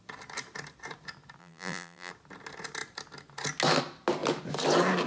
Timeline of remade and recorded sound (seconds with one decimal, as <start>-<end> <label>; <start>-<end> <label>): 0.0-1.4 recorded; 1.4-2.1 remade; 2.1-5.1 recorded